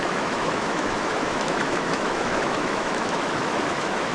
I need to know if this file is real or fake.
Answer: fake